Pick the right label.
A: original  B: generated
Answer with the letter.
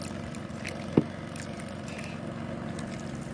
A